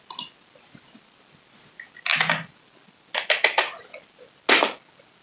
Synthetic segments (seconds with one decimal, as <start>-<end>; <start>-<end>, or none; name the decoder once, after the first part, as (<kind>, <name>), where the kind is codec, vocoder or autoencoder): none